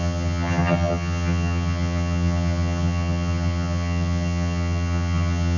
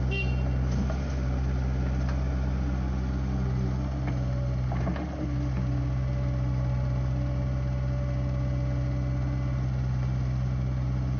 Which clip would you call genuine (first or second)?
second